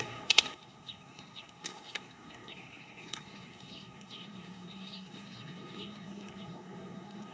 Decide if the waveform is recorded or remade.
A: remade